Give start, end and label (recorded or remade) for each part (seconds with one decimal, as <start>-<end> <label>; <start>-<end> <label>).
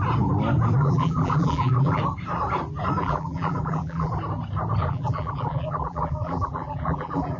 0.0-0.8 recorded; 0.8-2.0 remade; 2.0-3.0 recorded; 3.0-4.1 remade; 4.1-4.8 recorded; 4.8-7.4 remade